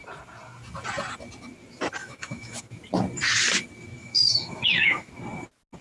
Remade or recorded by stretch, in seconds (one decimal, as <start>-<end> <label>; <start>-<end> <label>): 0.0-2.0 recorded; 2.0-2.7 remade; 2.7-4.0 recorded; 4.0-5.1 remade; 5.1-5.8 recorded